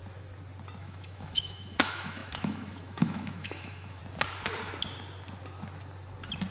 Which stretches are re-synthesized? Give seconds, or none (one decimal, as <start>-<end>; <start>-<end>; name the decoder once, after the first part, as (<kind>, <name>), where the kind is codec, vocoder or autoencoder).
0.8-4.0 (autoencoder, DAC-VAE)